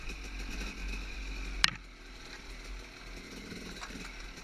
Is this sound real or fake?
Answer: real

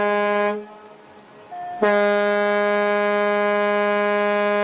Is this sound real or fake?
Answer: real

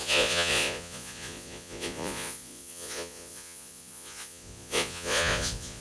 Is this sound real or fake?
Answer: fake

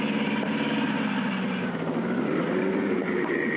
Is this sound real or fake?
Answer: real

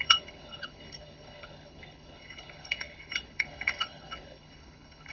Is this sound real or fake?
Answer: fake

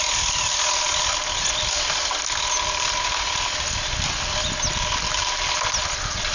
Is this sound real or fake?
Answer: real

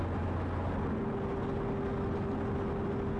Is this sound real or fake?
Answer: real